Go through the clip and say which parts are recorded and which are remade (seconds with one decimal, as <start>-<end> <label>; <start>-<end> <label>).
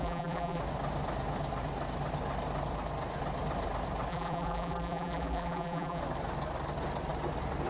0.0-0.6 remade; 0.6-4.1 recorded; 4.1-6.0 remade; 6.0-7.7 recorded